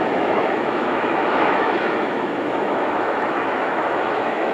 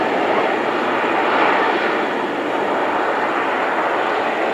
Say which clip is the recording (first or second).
second